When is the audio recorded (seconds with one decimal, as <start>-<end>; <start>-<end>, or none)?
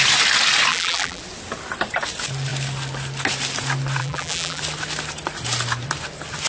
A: 0.0-0.7; 1.2-4.0; 4.6-6.5